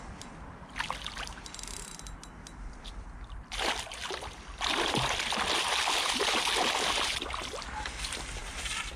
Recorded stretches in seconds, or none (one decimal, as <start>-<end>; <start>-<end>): 0.0-9.0